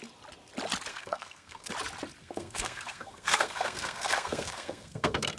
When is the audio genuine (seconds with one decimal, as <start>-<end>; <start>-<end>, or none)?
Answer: 0.0-0.9; 1.7-2.2